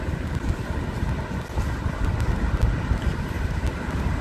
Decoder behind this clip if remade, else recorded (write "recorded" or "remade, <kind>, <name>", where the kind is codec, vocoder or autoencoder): recorded